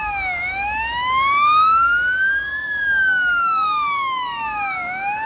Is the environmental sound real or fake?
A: fake